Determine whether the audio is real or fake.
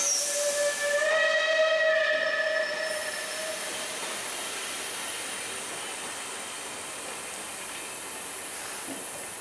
real